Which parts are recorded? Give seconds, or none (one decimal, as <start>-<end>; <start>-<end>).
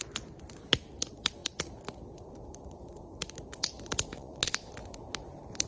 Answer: 0.0-4.1; 4.7-5.7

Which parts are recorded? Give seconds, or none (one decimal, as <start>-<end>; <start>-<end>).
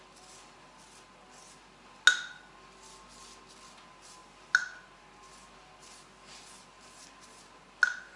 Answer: 0.0-8.2